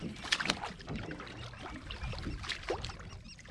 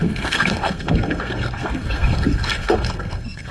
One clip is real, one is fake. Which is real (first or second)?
first